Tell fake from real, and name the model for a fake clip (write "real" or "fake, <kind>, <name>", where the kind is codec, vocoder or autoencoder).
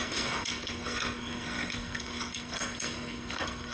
fake, codec, SNAC